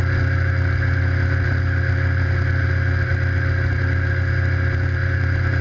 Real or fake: real